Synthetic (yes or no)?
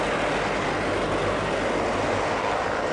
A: no